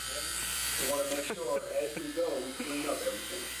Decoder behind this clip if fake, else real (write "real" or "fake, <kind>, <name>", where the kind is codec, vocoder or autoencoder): fake, vocoder, BigVGAN v2